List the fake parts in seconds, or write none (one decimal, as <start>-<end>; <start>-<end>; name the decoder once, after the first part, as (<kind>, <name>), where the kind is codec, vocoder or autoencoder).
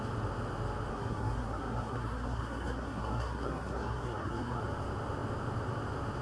0.9-4.6 (codec, SNAC)